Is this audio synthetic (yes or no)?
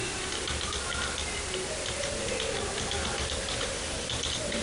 no